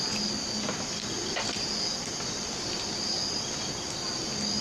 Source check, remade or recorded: recorded